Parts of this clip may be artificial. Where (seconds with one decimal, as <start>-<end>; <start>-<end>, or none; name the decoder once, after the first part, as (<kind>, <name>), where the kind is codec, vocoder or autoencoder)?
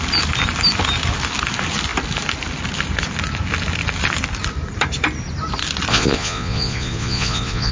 5.9-7.7 (vocoder, Vocos)